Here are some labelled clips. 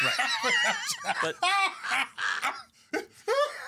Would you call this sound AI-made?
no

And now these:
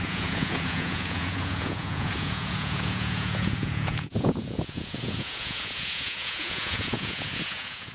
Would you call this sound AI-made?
yes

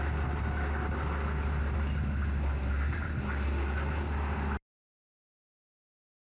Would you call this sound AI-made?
no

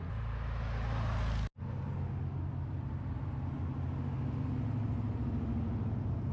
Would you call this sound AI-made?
no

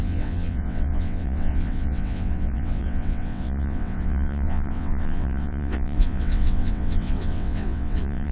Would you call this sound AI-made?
yes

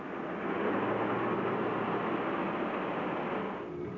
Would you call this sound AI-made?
no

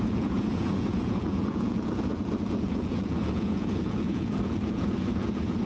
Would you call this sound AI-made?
yes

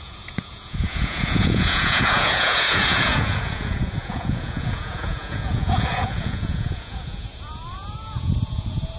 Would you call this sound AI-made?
yes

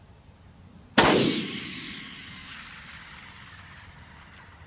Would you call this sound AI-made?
no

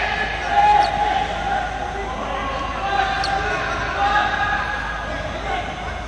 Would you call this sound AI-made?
no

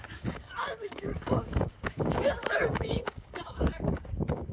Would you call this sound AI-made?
yes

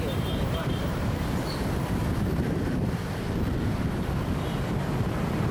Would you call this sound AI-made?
yes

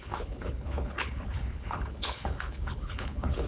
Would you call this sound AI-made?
yes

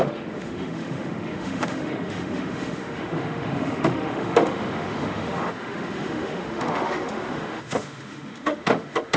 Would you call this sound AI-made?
yes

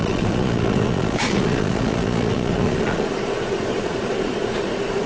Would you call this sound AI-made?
yes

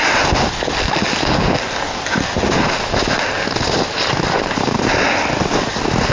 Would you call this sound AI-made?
no